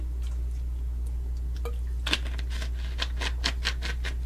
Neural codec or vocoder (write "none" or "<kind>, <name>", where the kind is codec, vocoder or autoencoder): none